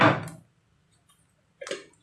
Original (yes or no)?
yes